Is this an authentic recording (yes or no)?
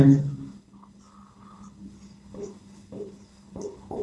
no